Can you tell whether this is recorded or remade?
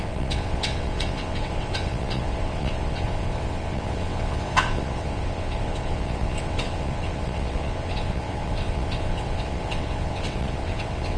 remade